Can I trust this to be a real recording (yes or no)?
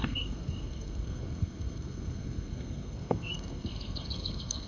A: no